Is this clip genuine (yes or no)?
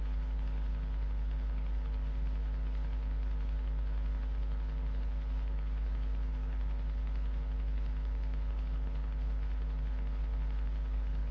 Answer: no